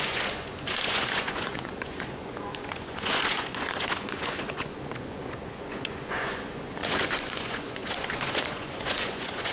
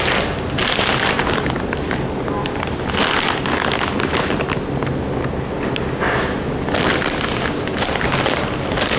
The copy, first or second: first